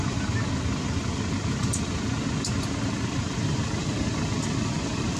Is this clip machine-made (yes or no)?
no